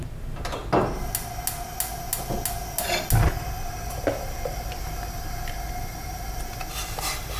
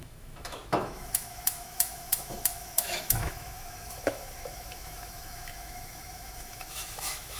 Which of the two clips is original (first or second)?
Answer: first